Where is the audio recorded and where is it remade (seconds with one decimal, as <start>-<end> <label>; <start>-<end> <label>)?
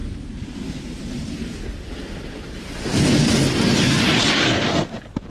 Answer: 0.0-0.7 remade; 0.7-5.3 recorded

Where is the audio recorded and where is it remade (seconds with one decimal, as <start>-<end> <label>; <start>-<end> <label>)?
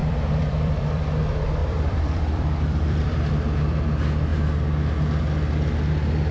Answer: 0.0-1.2 remade; 1.2-1.6 recorded; 1.6-3.3 remade; 3.3-6.3 recorded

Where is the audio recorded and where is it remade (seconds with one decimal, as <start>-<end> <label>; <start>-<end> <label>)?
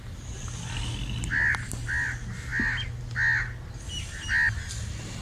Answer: 0.0-2.5 remade; 2.5-5.2 recorded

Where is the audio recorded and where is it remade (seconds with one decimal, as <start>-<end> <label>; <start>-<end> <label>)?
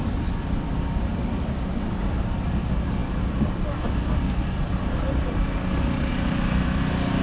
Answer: 0.0-2.2 remade; 2.2-3.0 recorded; 3.0-6.1 remade; 6.1-7.2 recorded